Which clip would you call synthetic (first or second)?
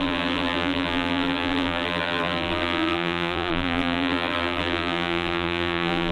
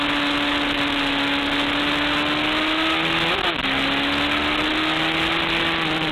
first